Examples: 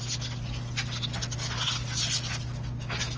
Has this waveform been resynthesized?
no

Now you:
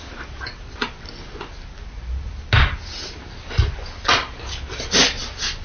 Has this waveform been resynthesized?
no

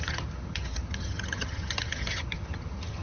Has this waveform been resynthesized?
yes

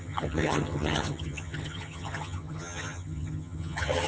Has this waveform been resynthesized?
yes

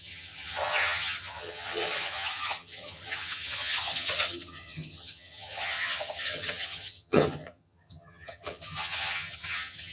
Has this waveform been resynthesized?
yes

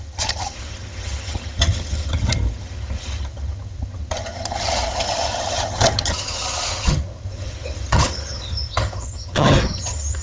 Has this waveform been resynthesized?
yes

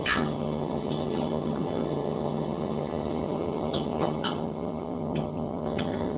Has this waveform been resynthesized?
yes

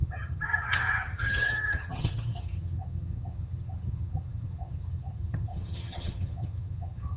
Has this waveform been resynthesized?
yes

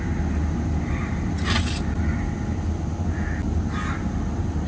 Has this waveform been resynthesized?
no